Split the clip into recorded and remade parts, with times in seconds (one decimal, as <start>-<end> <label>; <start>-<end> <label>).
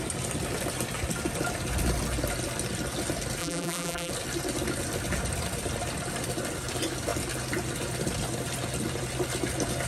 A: 0.0-3.4 recorded; 3.4-4.1 remade; 4.1-9.9 recorded